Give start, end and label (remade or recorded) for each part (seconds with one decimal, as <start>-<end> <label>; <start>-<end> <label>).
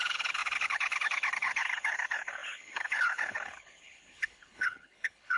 0.0-5.4 remade